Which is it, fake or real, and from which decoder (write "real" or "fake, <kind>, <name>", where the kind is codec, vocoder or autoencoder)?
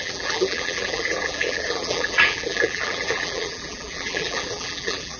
fake, vocoder, BigVGAN v2